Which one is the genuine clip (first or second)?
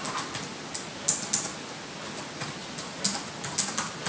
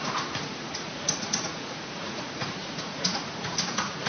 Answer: first